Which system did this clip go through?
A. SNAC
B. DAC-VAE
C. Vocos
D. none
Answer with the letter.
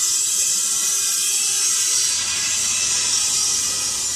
D